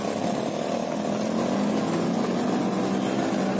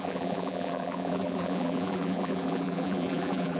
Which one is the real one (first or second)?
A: first